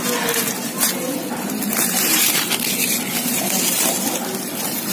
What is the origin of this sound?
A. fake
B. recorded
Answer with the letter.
B